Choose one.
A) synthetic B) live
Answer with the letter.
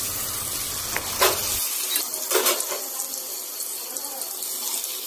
B